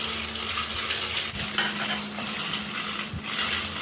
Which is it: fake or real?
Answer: real